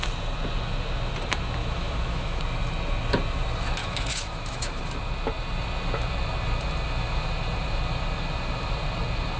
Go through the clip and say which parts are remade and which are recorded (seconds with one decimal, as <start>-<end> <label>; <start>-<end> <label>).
0.0-1.6 recorded; 1.6-2.4 remade; 2.4-3.8 recorded; 3.8-4.8 remade; 4.8-9.4 recorded